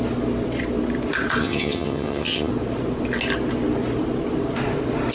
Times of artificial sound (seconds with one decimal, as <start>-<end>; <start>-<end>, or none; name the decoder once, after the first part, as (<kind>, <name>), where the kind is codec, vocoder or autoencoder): 1.4-2.5 (vocoder, HiFi-GAN)